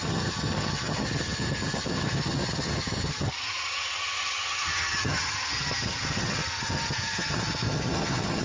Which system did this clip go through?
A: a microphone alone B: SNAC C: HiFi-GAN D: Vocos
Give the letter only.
C